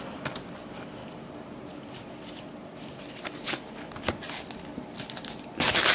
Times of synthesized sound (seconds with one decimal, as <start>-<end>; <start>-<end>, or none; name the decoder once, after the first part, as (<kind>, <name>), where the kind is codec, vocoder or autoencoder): 1.0-1.6 (vocoder, BigVGAN v2); 2.0-4.5